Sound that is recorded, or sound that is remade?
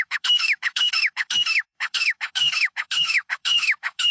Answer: remade